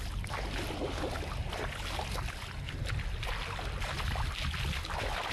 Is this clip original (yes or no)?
yes